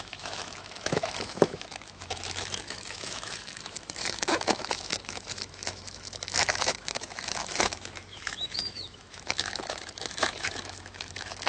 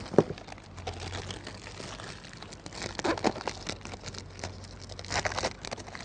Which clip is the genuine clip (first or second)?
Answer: second